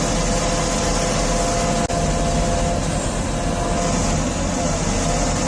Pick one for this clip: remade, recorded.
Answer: recorded